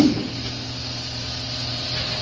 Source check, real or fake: real